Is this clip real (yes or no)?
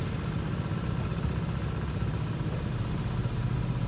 yes